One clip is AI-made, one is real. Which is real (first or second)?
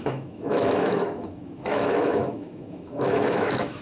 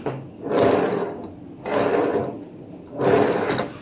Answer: second